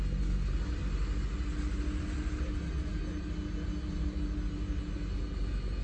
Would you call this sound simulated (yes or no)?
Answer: no